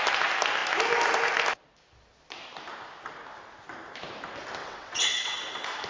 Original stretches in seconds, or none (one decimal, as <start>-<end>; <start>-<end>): 0.0-4.6; 5.4-5.9